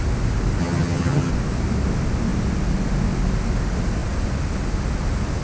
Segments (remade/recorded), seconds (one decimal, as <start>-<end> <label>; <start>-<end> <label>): 0.0-0.6 recorded; 0.6-1.3 remade; 1.3-5.4 recorded